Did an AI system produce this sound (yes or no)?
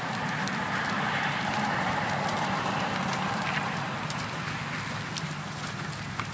no